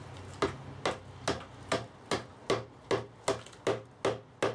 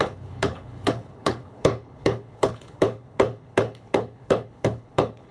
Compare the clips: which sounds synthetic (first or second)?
second